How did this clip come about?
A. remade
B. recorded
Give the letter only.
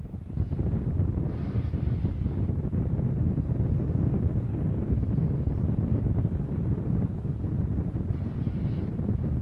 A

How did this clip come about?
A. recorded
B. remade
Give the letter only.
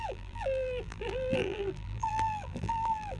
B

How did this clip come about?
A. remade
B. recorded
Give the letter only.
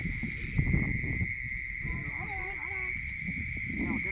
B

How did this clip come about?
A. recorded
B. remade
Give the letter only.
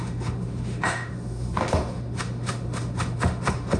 B